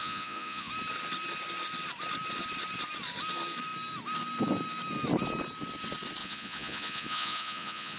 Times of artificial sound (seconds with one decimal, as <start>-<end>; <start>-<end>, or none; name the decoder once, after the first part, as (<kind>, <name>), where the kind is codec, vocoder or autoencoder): 0.0-0.7 (vocoder, Vocos); 6.2-8.0